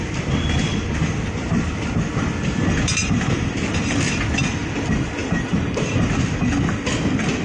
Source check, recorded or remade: recorded